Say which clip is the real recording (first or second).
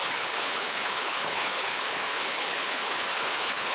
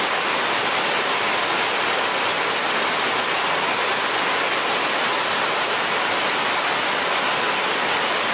second